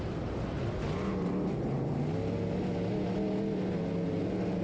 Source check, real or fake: real